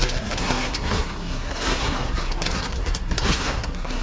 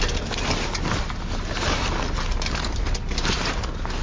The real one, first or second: second